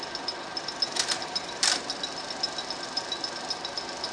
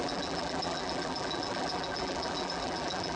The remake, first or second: second